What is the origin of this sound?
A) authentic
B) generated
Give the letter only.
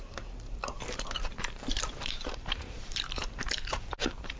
B